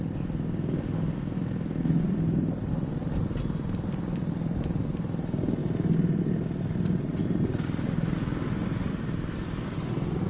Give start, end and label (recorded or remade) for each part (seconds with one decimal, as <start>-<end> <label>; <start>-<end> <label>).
0.0-2.6 recorded; 2.6-3.2 remade; 3.2-7.2 recorded; 7.2-8.9 remade; 8.9-10.3 recorded